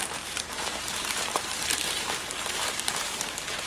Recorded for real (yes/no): no